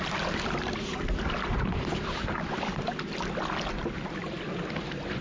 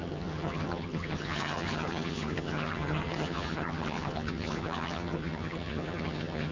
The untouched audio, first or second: first